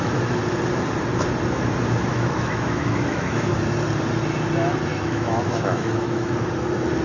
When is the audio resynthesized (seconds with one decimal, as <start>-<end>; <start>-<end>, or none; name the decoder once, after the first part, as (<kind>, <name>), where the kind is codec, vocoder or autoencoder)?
2.1-3.5 (autoencoder, DAC-VAE); 4.9-6.5